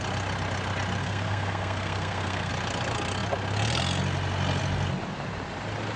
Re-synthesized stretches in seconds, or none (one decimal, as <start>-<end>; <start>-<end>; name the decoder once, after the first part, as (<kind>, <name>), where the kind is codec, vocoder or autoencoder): 1.0-2.5 (codec, SNAC)